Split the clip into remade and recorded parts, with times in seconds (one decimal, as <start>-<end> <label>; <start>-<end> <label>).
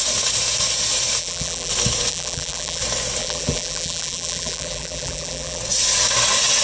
0.0-1.2 recorded; 1.2-1.7 remade; 1.7-2.1 recorded; 2.1-2.8 remade; 2.8-3.2 recorded; 3.2-5.6 remade; 5.6-6.6 recorded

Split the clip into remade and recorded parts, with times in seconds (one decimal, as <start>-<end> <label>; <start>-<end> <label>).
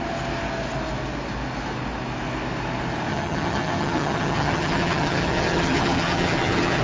0.0-3.1 recorded; 3.1-6.8 remade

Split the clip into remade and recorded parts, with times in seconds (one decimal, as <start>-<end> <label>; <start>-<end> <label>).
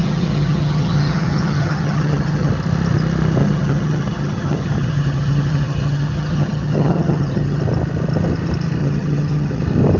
0.0-2.5 remade; 2.5-3.4 recorded; 3.4-7.6 remade; 7.6-8.8 recorded; 8.8-9.6 remade; 9.6-10.0 recorded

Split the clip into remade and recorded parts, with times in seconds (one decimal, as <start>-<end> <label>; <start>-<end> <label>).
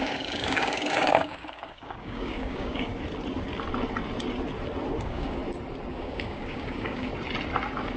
0.0-2.9 remade; 2.9-5.0 recorded; 5.0-5.4 remade; 5.4-5.9 recorded; 5.9-7.1 remade; 7.1-8.0 recorded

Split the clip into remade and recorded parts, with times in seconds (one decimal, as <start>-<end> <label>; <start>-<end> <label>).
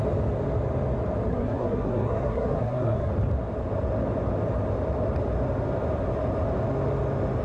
0.0-1.3 recorded; 1.3-3.1 remade; 3.1-7.4 recorded